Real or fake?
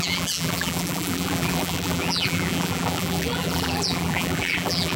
fake